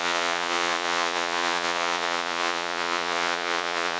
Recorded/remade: remade